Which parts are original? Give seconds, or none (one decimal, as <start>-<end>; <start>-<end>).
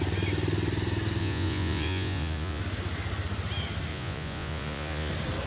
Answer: 0.0-1.2; 2.6-3.9; 5.1-5.5